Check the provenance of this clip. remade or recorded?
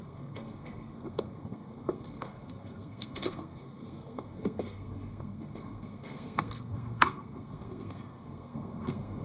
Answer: remade